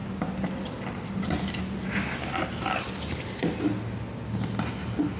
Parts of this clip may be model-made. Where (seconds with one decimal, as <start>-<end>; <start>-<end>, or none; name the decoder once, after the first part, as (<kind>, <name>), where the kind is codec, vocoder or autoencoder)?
none